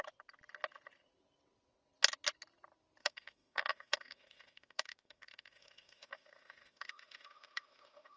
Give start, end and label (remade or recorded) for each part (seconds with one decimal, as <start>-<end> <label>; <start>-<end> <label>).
0.0-3.0 recorded; 3.0-8.2 remade

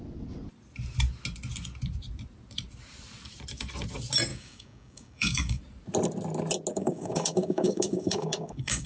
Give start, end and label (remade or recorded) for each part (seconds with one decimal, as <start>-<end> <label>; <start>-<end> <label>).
0.0-4.3 recorded; 4.3-5.6 remade; 5.6-6.7 recorded; 6.7-8.9 remade

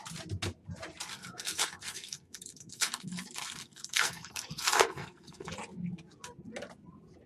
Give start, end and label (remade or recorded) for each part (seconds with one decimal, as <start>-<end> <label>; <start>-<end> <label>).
0.0-1.1 recorded; 1.1-5.5 remade; 5.5-7.3 recorded